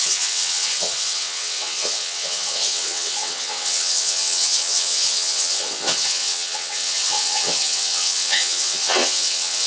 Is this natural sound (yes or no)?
no